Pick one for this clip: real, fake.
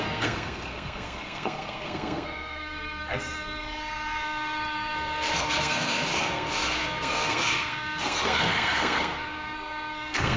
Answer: fake